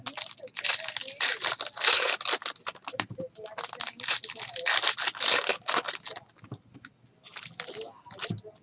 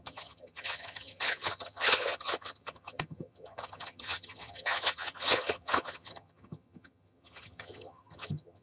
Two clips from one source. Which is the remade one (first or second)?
second